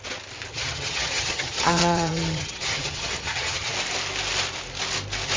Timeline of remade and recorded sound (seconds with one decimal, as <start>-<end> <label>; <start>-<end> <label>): 0.0-0.5 recorded; 0.5-3.7 remade; 3.7-5.4 recorded